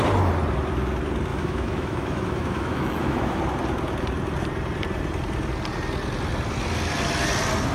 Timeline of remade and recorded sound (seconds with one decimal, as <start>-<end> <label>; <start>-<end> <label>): 0.0-1.3 recorded; 1.3-3.4 remade; 3.4-7.7 recorded